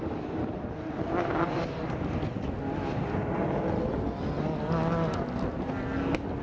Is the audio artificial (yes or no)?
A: no